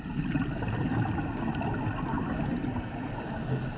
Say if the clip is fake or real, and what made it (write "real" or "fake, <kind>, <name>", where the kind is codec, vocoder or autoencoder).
real